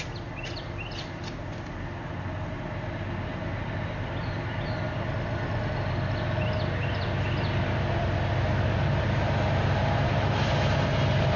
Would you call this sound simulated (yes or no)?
no